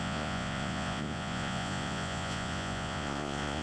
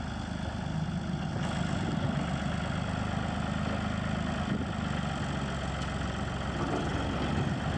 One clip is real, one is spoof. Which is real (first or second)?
second